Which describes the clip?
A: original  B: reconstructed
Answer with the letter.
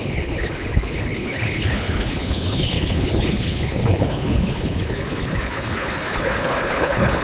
B